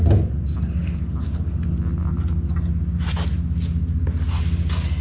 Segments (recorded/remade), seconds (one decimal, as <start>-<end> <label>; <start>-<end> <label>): 0.0-5.0 recorded